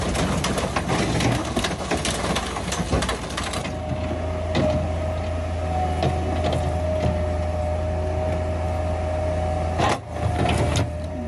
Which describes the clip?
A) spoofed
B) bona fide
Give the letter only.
B